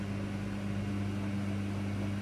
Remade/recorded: recorded